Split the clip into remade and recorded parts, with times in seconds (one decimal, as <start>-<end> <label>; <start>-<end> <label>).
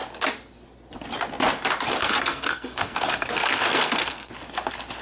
0.0-2.0 recorded; 2.0-4.3 remade; 4.3-5.0 recorded